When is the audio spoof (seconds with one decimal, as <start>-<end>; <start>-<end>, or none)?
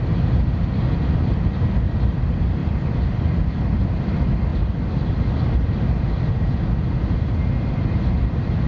none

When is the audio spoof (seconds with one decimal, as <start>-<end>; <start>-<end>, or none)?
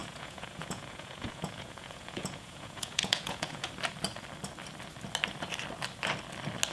0.0-3.7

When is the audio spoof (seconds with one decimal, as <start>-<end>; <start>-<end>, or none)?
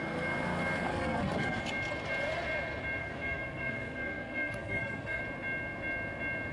0.9-1.6; 3.0-5.2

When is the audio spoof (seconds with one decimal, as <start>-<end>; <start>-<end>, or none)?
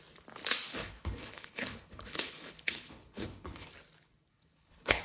0.7-3.7; 4.3-5.0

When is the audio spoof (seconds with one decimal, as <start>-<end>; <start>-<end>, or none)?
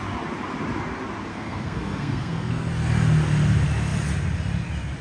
1.3-2.7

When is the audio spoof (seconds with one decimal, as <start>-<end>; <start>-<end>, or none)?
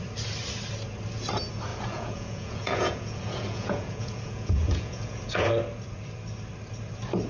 1.7-5.5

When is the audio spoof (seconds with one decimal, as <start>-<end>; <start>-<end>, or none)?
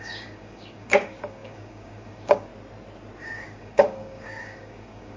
0.0-2.5; 3.2-5.2